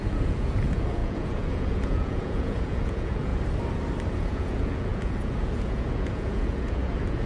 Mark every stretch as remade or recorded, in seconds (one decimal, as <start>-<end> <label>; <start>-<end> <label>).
0.0-3.3 remade; 3.3-4.2 recorded; 4.2-7.3 remade

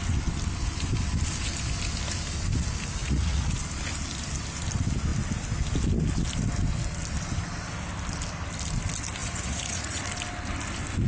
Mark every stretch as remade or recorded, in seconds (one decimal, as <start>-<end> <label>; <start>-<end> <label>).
0.0-3.0 recorded; 3.0-3.6 remade; 3.6-9.2 recorded; 9.2-10.0 remade; 10.0-11.1 recorded

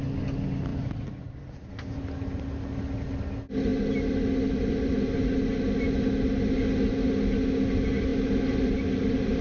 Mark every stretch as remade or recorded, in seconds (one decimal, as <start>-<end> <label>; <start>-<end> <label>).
0.0-9.4 recorded

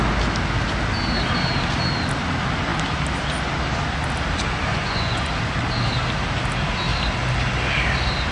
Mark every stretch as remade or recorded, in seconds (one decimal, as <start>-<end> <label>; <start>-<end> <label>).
0.0-4.7 recorded; 4.7-5.3 remade; 5.3-8.3 recorded

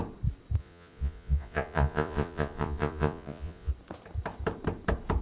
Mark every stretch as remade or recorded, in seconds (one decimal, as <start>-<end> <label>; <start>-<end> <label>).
0.0-0.6 recorded; 0.6-3.7 remade; 3.7-5.2 recorded

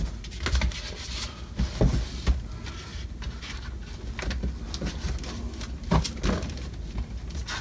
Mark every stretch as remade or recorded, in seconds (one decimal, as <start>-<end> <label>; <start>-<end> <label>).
0.0-7.6 recorded